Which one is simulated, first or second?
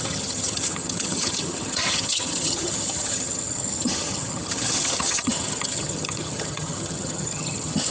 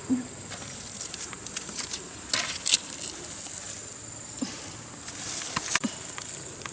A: first